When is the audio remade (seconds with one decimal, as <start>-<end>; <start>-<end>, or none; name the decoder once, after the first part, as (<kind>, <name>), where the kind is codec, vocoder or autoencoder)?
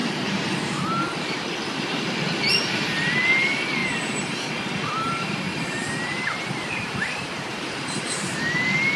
0.0-0.5 (vocoder, BigVGAN v2); 3.8-4.5; 5.5-8.2